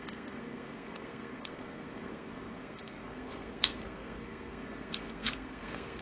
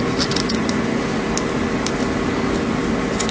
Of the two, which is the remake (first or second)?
first